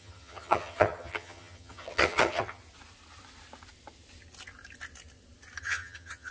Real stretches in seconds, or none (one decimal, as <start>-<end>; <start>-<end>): 2.6-5.6